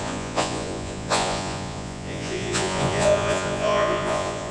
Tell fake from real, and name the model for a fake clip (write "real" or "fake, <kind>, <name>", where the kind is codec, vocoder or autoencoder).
fake, vocoder, Vocos